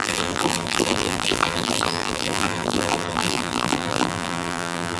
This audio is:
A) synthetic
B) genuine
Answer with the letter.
A